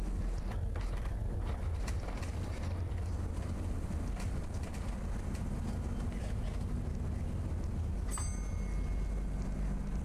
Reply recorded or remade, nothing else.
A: recorded